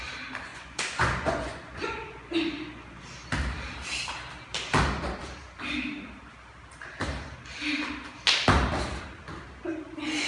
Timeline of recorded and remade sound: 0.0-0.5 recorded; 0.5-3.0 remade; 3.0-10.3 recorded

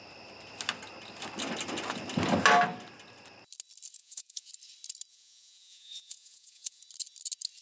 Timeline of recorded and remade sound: 0.0-4.0 recorded; 4.0-4.5 remade; 4.5-5.1 recorded; 5.1-6.8 remade; 6.8-7.6 recorded

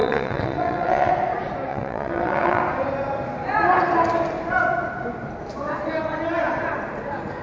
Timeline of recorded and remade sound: 0.0-1.1 remade; 1.1-1.7 recorded; 1.7-2.6 remade; 2.6-7.4 recorded

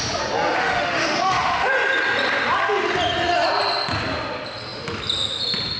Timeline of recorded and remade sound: 0.0-0.6 recorded; 0.6-1.7 remade; 1.7-5.8 recorded